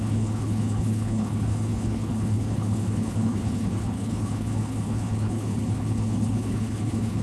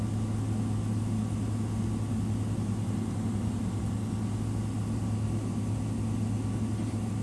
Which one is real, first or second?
second